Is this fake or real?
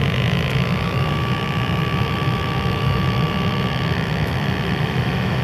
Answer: fake